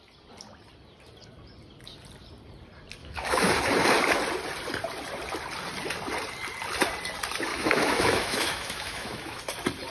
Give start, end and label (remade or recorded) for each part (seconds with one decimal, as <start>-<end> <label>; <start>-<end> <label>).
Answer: 0.0-3.0 recorded; 3.0-3.5 remade; 3.5-7.5 recorded; 7.5-9.4 remade; 9.4-9.9 recorded